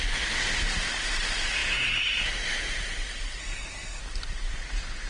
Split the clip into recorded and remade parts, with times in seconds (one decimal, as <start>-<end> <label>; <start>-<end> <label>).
0.0-3.4 recorded; 3.4-4.0 remade; 4.0-5.1 recorded